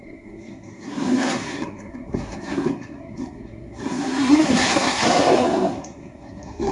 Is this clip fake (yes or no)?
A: yes